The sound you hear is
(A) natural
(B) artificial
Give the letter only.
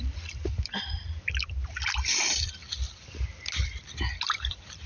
B